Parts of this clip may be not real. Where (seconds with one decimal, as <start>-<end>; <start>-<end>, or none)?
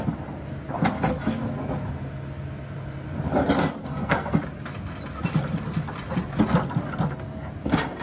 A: 3.8-4.4